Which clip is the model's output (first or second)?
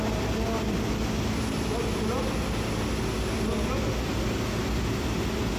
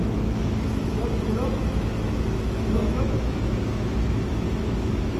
second